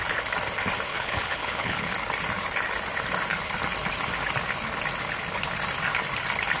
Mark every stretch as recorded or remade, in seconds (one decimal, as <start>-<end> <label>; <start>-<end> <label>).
0.0-0.9 recorded; 0.9-1.9 remade; 1.9-6.6 recorded

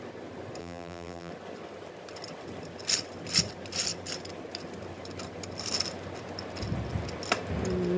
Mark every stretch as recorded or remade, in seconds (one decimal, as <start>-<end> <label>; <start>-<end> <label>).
0.0-0.6 recorded; 0.6-1.3 remade; 1.3-8.0 recorded

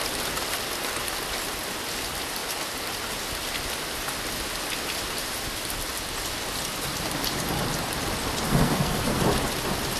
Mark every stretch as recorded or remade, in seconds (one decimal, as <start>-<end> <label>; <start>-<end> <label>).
0.0-8.5 recorded; 8.5-9.2 remade; 9.2-10.0 recorded

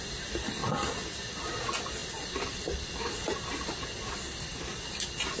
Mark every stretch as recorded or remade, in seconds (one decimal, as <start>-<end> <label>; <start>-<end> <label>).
0.0-5.4 recorded